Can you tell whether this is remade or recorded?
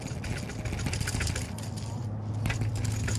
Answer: remade